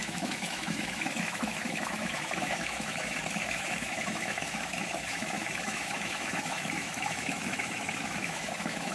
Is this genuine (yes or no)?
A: no